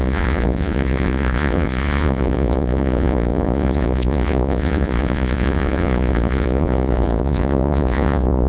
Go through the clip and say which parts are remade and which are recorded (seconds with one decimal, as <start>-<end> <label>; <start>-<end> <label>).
0.0-8.5 remade

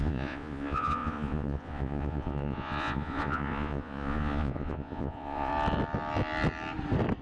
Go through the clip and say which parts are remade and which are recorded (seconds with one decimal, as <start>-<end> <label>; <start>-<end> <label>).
0.0-5.5 remade; 5.5-7.2 recorded

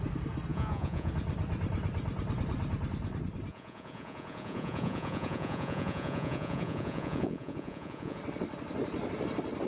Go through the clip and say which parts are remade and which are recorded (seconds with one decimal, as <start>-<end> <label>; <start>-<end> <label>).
0.0-0.5 recorded; 0.5-1.1 remade; 1.1-3.5 recorded; 3.5-8.2 remade; 8.2-9.7 recorded

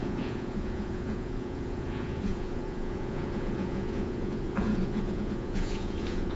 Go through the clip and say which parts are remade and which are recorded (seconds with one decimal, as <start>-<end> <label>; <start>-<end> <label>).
0.0-6.4 remade

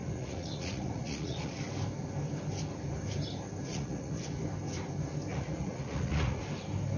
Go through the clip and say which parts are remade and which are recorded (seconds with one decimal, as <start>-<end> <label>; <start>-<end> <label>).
0.0-1.6 remade; 1.6-3.7 recorded; 3.7-4.2 remade; 4.2-5.3 recorded; 5.3-6.4 remade; 6.4-7.0 recorded

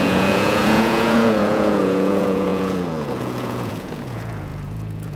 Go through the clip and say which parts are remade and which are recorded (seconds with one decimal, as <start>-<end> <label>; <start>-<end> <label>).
0.0-5.2 remade